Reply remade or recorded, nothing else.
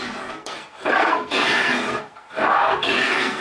remade